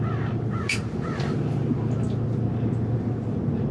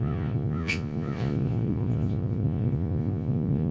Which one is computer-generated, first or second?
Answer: second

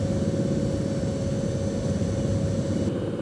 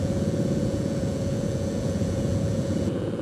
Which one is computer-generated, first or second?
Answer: second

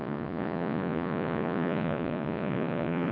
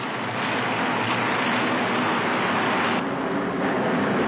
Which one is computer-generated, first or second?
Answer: first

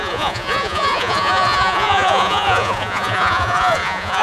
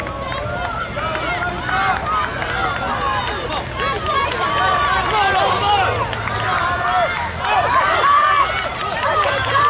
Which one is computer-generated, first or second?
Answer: first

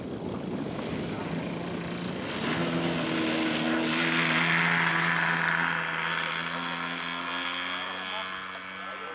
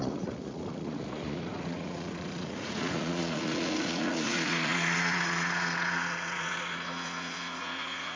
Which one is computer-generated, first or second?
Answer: second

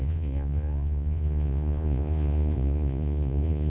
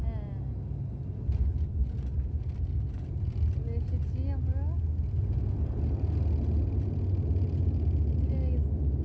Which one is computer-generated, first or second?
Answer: first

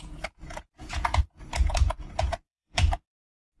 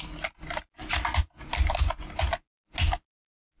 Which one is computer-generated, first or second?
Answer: first